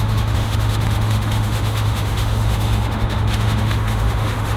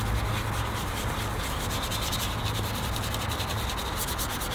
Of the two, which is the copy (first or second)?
first